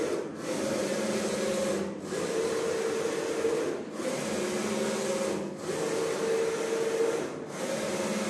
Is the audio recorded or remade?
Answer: recorded